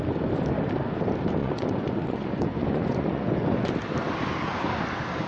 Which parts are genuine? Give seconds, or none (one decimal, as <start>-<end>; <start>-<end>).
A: 0.0-1.4; 3.7-5.3